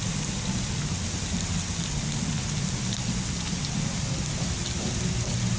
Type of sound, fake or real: fake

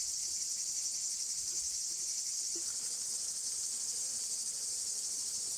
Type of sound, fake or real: fake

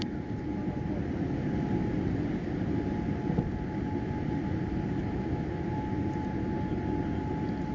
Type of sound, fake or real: real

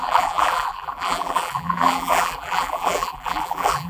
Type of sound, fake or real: fake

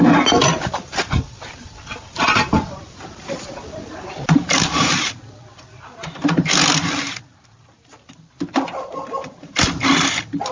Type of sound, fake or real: fake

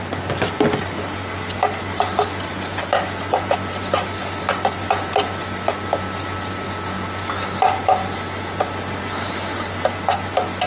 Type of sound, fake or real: real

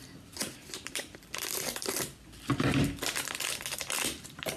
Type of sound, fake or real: fake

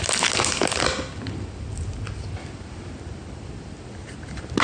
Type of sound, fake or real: real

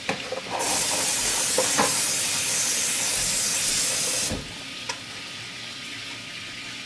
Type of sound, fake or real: real